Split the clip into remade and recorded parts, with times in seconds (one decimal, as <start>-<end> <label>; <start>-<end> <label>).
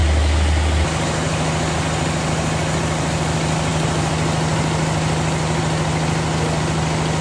0.0-7.2 recorded